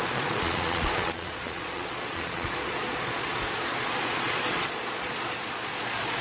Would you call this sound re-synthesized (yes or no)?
yes